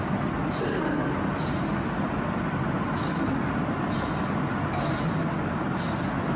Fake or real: real